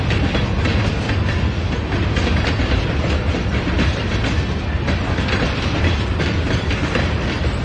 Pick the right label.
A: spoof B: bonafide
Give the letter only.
B